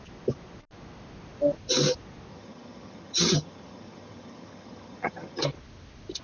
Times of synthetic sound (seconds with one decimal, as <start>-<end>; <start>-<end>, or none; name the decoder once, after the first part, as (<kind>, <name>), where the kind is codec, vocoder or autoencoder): 2.3-5.4 (vocoder, HiFi-GAN)